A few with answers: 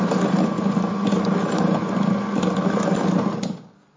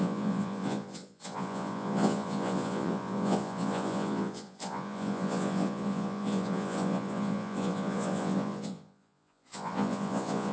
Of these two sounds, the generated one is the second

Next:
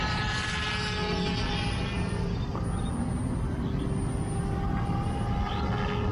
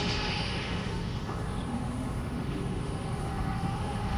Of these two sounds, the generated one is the second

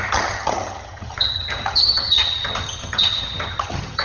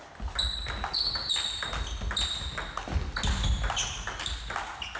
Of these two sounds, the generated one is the first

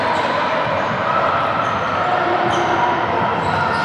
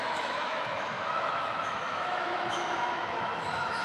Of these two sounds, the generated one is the second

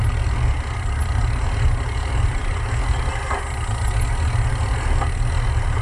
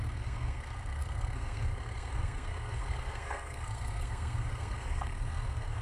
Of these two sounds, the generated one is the second